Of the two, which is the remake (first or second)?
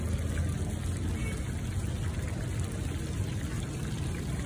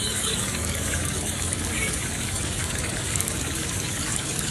second